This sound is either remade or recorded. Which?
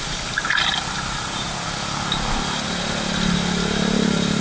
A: recorded